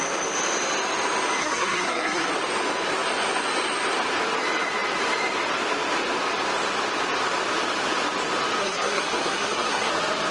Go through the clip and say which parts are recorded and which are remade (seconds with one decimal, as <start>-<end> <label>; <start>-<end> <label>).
0.0-1.4 recorded; 1.4-2.3 remade; 2.3-8.6 recorded; 8.6-9.9 remade; 9.9-10.3 recorded